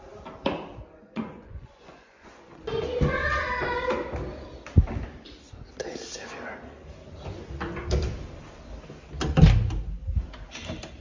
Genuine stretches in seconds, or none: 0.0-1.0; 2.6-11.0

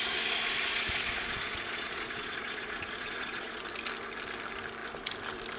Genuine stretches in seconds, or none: 0.0-0.7; 3.6-5.6